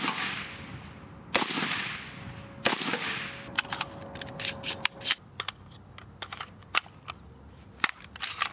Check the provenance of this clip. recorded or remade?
recorded